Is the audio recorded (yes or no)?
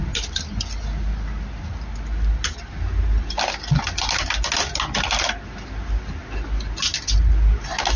yes